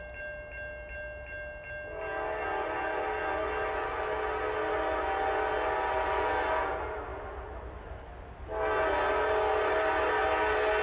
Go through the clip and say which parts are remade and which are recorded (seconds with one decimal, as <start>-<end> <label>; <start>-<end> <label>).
0.0-10.8 recorded